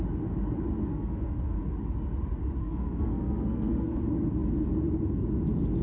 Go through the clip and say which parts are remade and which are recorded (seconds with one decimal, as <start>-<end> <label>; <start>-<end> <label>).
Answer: 0.0-0.9 recorded; 0.9-1.6 remade; 1.6-2.6 recorded; 2.6-4.0 remade; 4.0-5.8 recorded